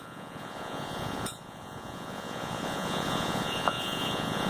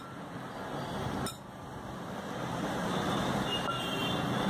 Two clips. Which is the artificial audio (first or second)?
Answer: first